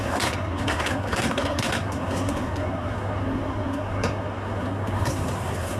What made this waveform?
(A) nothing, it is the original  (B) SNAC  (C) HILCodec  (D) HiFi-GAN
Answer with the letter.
B